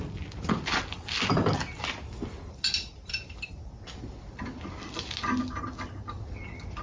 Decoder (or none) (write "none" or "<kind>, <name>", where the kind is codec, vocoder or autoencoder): none